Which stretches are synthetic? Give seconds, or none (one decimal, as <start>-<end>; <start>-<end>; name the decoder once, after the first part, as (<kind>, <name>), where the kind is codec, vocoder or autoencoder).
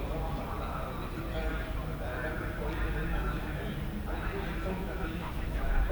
3.0-3.7 (autoencoder, DAC-VAE); 4.6-5.9